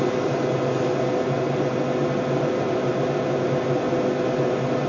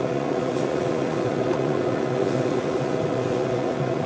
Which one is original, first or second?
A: first